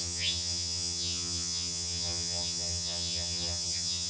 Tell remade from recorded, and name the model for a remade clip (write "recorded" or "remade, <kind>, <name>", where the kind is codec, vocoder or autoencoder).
remade, vocoder, HiFi-GAN